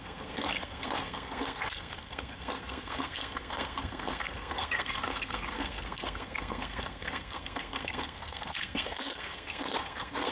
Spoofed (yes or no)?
yes